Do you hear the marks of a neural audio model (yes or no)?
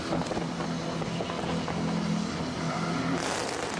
no